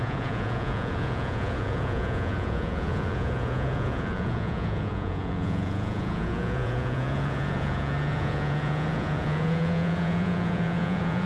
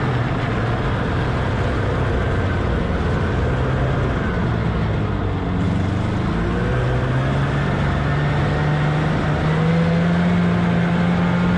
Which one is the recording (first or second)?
second